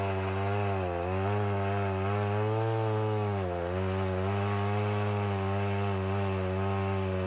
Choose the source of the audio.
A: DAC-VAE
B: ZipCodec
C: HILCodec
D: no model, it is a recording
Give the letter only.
D